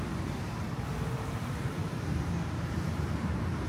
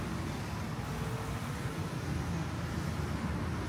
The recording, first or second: second